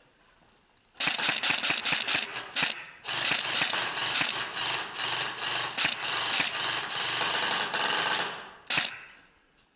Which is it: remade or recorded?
recorded